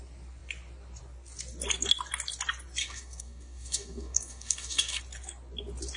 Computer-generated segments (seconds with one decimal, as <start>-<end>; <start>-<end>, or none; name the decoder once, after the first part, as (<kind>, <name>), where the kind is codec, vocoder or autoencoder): 2.8-5.0 (codec, DAC)